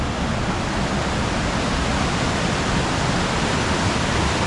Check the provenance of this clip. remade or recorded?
recorded